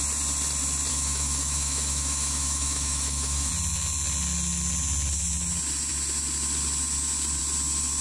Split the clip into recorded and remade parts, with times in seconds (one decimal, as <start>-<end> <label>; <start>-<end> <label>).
0.0-0.9 recorded; 0.9-3.5 remade; 3.5-8.0 recorded